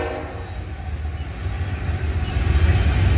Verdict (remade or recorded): recorded